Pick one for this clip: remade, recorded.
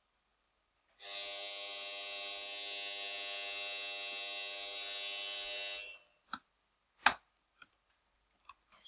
recorded